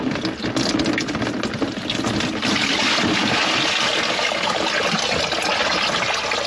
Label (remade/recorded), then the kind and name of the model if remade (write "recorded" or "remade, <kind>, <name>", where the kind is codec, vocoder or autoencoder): recorded